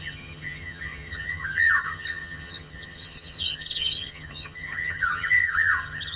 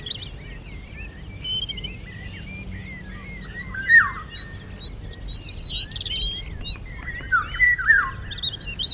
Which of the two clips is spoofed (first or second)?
first